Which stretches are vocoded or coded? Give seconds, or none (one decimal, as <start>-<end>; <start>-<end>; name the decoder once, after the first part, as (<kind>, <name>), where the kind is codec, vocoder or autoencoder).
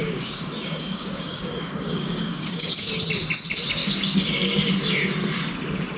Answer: 0.0-2.9 (codec, DAC); 3.8-4.7